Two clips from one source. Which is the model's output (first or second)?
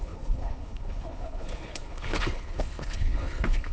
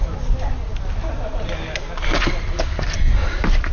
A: first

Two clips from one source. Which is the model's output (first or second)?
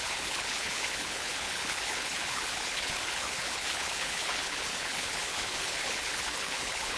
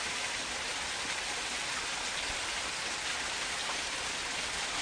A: first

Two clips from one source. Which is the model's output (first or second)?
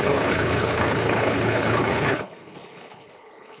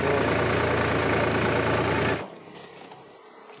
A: first